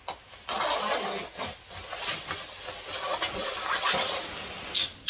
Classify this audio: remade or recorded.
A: recorded